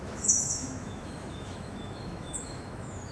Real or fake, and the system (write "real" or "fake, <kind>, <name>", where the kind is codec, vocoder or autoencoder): fake, autoencoder, DAC-VAE